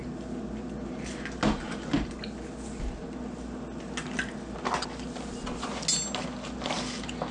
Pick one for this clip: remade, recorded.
recorded